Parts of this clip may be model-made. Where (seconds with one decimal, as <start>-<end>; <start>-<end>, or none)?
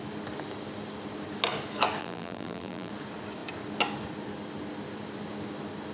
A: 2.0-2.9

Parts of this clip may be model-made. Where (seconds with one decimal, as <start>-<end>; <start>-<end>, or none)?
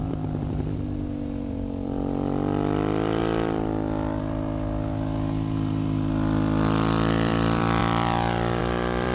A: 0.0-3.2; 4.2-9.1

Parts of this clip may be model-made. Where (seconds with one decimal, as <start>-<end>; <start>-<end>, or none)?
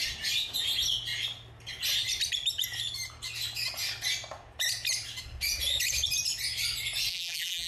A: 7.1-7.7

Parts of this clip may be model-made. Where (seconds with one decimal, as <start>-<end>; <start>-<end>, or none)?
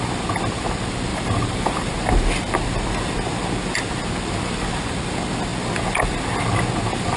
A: 1.1-1.9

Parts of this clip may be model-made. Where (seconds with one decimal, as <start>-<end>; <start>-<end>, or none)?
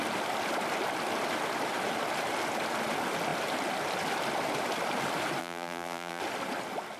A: 5.4-6.2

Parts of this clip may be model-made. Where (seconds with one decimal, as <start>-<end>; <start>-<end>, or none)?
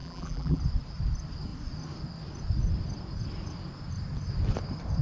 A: 0.0-0.6